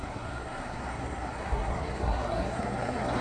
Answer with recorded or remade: remade